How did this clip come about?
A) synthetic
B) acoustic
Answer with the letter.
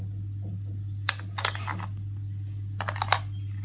B